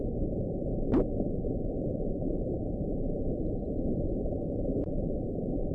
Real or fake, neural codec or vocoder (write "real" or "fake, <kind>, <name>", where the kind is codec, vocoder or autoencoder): fake, vocoder, BigVGAN v2